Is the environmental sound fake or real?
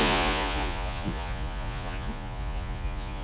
fake